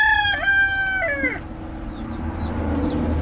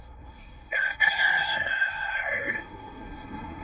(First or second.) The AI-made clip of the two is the second